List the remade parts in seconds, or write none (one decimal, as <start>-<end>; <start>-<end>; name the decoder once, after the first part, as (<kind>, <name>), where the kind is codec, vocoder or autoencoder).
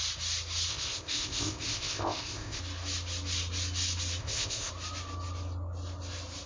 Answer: 0.7-2.6 (codec, ZipCodec); 4.2-4.7